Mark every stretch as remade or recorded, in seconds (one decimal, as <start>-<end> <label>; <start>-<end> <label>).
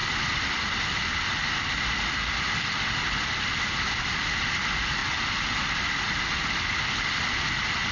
0.0-7.9 recorded